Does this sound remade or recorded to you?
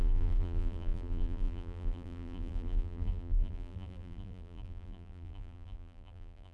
remade